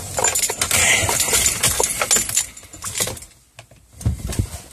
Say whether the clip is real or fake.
real